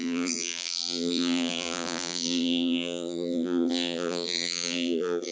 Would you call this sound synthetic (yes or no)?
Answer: yes